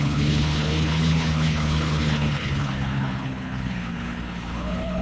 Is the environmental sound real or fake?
fake